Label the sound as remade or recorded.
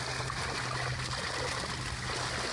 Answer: recorded